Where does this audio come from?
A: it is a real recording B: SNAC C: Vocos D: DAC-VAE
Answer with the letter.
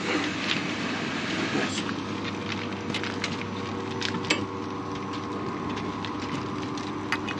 A